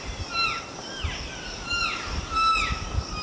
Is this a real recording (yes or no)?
yes